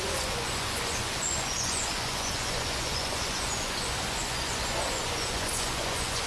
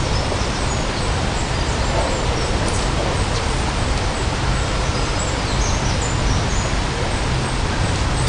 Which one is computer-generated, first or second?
first